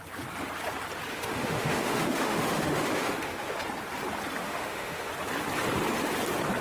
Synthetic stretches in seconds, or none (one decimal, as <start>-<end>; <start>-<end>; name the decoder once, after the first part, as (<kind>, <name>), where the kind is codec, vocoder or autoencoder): 1.1-3.6 (autoencoder, DAC-VAE); 4.4-5.1